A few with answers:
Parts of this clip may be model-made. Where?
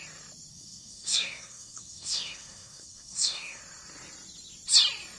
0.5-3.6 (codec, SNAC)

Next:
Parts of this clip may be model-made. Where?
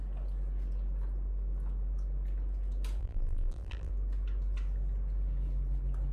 3.0-3.9 (vocoder, BigVGAN v2)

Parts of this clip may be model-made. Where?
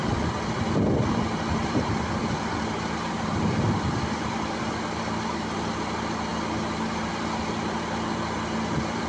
0.0-6.3 (vocoder, BigVGAN v2); 7.1-9.1